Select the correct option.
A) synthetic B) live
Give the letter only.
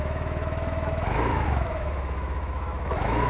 A